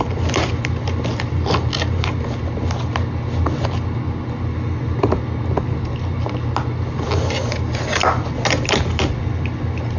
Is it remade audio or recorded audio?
recorded